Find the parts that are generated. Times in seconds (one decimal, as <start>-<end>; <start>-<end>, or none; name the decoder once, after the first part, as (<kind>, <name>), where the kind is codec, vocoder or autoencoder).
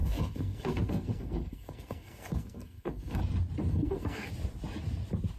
0.0-3.2 (codec, SNAC); 3.7-4.3